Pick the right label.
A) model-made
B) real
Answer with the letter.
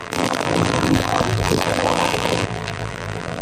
A